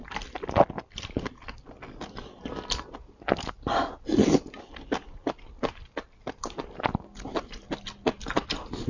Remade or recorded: recorded